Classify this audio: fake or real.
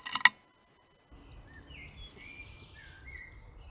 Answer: real